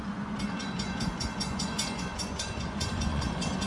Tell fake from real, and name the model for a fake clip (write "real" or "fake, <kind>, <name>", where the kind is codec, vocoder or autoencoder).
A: fake, vocoder, Vocos